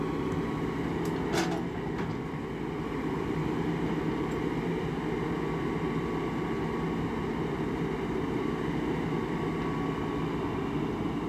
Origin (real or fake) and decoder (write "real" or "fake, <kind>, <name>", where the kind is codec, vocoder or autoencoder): real